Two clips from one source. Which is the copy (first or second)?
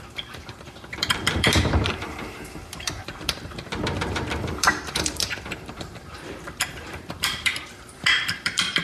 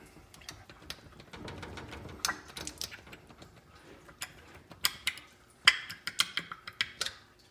first